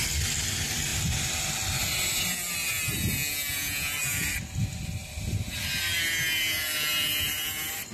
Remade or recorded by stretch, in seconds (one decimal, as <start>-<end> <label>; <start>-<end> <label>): 0.0-7.9 recorded

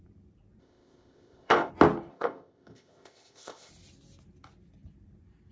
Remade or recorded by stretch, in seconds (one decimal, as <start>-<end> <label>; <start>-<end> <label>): 0.0-0.6 recorded; 0.6-1.7 remade; 1.7-2.1 recorded; 2.1-3.7 remade; 3.7-5.5 recorded